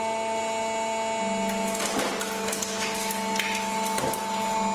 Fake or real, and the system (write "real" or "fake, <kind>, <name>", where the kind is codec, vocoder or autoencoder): real